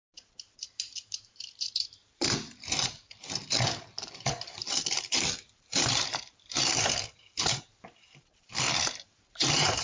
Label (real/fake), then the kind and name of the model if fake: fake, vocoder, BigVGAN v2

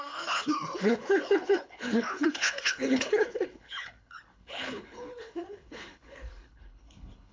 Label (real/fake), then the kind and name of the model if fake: fake, codec, HILCodec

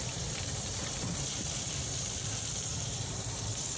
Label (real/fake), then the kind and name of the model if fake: fake, vocoder, BigVGAN v2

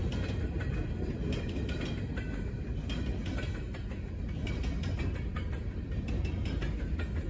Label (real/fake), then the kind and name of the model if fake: real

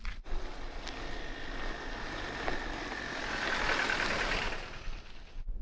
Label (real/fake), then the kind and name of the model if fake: real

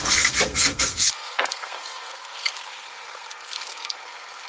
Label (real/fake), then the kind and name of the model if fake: fake, codec, SNAC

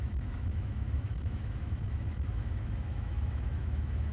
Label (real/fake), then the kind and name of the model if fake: fake, autoencoder, DAC-VAE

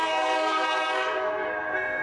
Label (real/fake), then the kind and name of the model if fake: fake, codec, SNAC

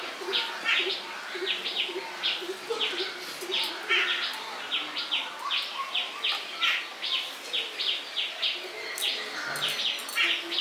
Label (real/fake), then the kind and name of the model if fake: real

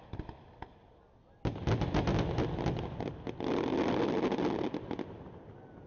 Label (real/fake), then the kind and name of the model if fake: real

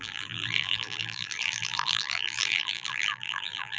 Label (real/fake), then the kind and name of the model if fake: fake, vocoder, BigVGAN v2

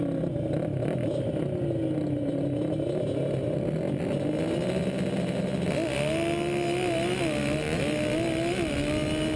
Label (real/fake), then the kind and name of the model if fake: real